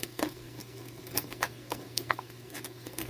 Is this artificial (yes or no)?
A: yes